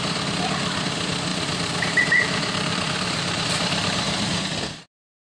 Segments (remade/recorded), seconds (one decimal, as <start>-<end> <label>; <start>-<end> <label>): 0.0-1.3 recorded; 1.3-4.4 remade; 4.4-5.2 recorded